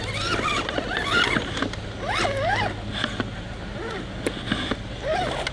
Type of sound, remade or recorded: recorded